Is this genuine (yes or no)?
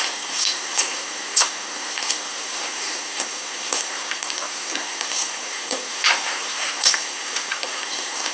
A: no